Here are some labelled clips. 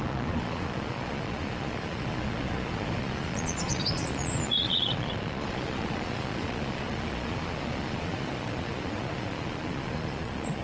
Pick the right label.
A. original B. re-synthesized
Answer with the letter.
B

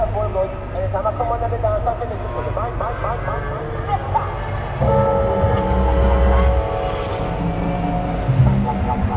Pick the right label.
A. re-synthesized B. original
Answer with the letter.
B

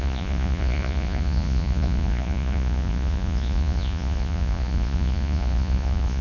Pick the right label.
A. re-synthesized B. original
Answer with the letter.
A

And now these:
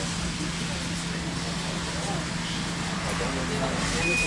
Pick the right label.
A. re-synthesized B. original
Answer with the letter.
B